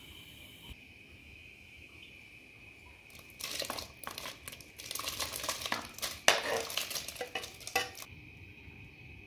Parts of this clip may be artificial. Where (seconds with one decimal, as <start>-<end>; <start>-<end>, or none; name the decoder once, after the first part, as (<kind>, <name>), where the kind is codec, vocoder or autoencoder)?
1.2-2.1 (autoencoder, DAC-VAE)